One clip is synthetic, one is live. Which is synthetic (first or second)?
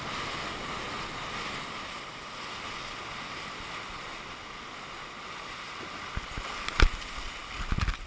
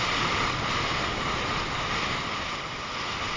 second